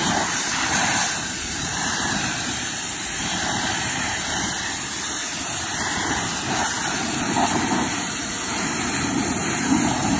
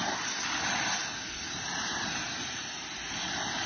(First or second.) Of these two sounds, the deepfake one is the first